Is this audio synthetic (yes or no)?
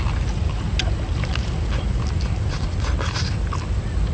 no